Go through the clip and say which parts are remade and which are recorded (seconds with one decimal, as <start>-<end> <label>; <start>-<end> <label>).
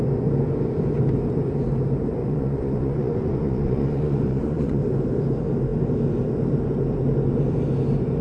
0.0-2.2 recorded; 2.2-4.8 remade; 4.8-8.2 recorded